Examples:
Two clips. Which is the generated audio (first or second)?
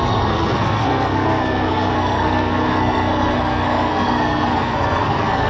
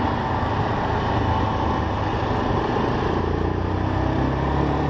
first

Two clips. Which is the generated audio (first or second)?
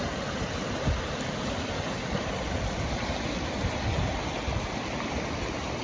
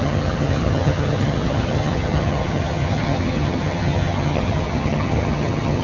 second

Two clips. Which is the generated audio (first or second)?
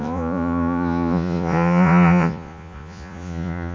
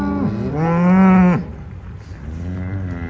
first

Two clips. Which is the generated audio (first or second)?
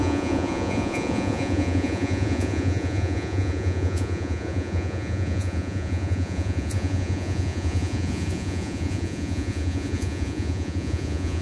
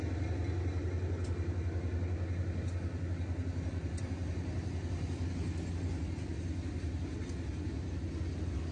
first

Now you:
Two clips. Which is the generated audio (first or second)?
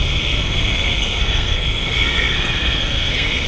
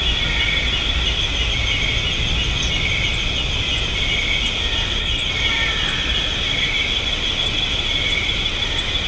first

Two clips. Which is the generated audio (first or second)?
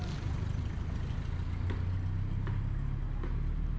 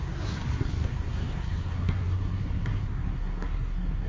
second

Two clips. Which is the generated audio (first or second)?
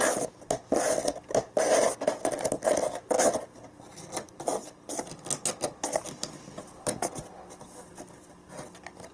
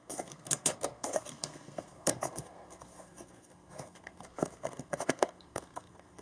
second